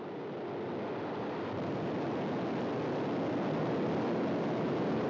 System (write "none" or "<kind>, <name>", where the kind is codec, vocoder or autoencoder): none